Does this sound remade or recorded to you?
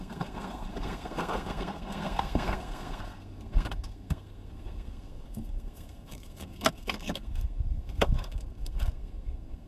remade